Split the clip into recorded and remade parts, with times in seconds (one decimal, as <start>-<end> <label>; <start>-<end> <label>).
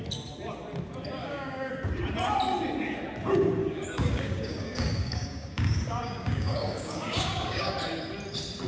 0.0-1.2 recorded; 1.2-1.7 remade; 1.7-3.6 recorded; 3.6-7.7 remade; 7.7-8.7 recorded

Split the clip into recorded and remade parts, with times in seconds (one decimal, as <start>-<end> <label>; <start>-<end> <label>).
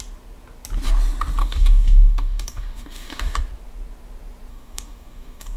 0.0-1.4 recorded; 1.4-3.4 remade; 3.4-4.5 recorded; 4.5-5.6 remade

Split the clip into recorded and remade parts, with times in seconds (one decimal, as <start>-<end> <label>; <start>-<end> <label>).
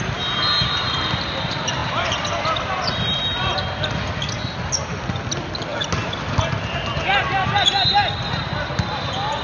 0.0-9.4 recorded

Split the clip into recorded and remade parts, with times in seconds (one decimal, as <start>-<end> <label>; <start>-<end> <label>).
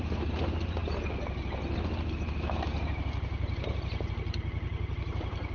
0.0-5.5 recorded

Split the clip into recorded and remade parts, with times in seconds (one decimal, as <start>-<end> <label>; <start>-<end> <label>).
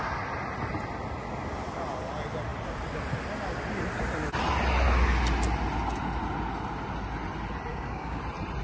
0.0-7.7 recorded; 7.7-8.2 remade; 8.2-8.6 recorded